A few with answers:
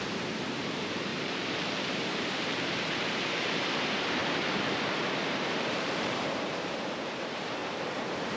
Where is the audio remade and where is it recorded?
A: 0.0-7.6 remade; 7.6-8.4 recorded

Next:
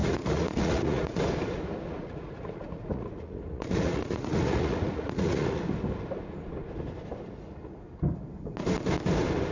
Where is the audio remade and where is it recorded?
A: 0.0-1.2 remade; 1.2-1.9 recorded; 1.9-5.6 remade; 5.6-9.5 recorded